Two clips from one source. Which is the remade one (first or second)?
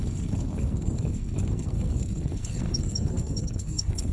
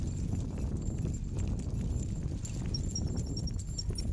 first